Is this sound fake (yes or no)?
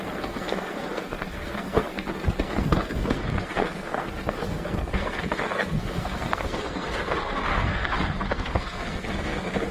yes